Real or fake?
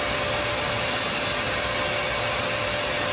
real